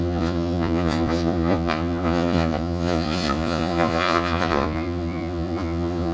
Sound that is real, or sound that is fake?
fake